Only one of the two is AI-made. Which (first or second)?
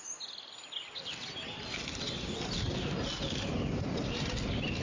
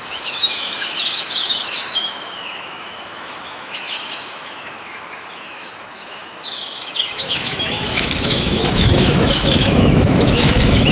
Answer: second